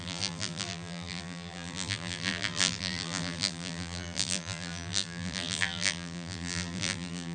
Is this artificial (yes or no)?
yes